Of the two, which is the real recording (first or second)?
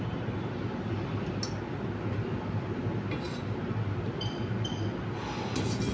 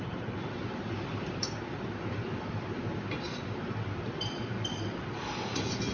first